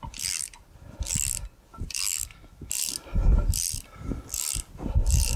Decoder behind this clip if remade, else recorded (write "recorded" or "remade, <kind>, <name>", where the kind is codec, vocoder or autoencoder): recorded